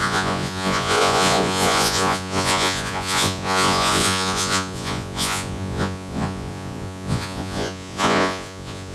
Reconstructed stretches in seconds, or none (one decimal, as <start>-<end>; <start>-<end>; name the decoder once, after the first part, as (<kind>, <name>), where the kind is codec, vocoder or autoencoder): 0.0-8.9 (vocoder, Vocos)